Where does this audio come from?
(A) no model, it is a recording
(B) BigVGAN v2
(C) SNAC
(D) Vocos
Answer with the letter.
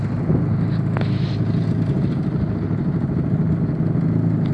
A